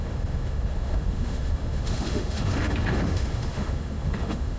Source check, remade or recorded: remade